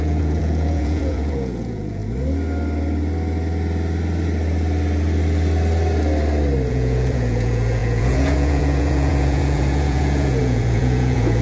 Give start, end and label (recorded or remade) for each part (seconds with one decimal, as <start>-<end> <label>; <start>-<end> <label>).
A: 0.0-2.0 remade; 2.0-6.7 recorded; 6.7-11.4 remade